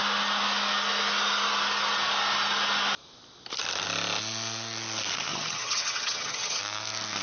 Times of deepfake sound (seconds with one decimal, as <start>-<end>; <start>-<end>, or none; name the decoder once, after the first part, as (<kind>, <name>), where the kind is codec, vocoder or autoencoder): 5.3-6.6 (vocoder, HiFi-GAN)